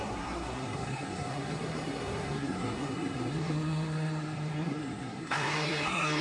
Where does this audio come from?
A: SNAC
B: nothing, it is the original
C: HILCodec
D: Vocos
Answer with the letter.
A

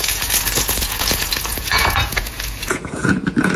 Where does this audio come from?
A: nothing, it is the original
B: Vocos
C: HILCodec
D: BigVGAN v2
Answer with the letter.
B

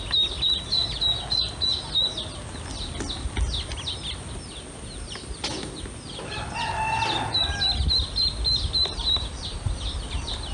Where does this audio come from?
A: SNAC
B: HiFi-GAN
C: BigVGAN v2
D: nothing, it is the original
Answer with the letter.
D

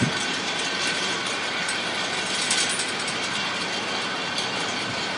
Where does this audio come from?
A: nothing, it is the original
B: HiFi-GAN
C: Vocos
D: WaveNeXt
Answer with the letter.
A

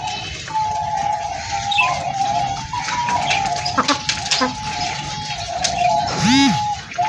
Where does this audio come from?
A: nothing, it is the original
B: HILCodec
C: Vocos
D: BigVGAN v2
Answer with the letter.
A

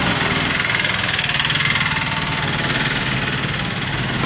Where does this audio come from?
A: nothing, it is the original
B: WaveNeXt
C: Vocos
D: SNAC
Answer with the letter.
A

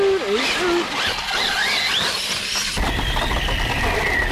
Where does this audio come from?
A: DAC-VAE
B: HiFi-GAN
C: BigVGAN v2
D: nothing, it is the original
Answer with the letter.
D